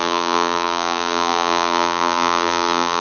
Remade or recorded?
remade